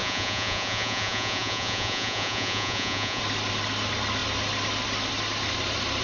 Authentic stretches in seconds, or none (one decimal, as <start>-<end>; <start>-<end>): 3.2-6.0